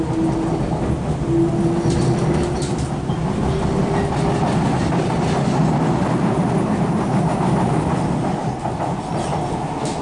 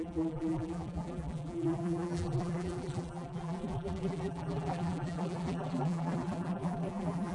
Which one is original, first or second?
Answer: first